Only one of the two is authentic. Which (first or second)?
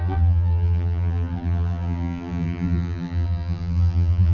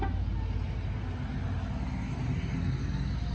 second